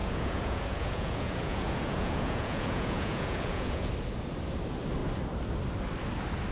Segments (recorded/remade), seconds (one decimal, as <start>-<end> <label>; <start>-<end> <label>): 0.0-3.9 remade; 3.9-6.5 recorded